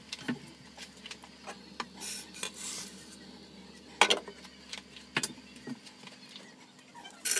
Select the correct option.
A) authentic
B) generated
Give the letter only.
A